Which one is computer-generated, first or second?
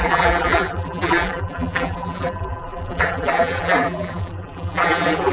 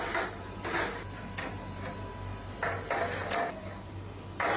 first